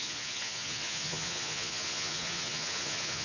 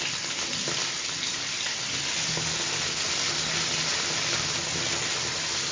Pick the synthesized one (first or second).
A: first